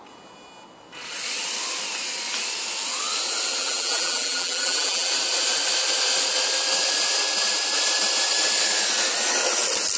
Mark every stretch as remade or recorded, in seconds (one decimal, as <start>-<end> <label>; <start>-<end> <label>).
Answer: 0.0-3.6 recorded; 3.6-5.1 remade; 5.1-10.0 recorded